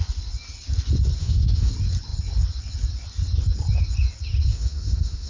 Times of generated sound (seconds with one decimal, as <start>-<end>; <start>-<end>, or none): 1.2-1.7; 4.5-5.3